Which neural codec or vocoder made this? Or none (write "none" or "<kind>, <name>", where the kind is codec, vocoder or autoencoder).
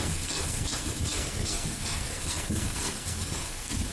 codec, SNAC